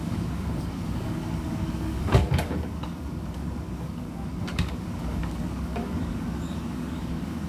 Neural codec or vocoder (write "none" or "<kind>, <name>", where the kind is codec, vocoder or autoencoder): codec, DAC